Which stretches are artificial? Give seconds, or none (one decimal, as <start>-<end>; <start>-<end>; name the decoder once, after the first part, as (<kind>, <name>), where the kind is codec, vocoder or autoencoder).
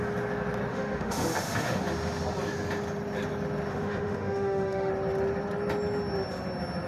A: 0.7-1.8 (autoencoder, DAC-VAE); 3.7-4.9